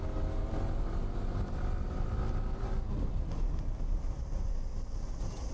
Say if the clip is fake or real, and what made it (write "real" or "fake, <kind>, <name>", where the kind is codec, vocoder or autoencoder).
real